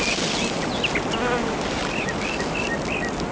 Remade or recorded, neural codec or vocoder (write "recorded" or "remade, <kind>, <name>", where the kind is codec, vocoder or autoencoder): recorded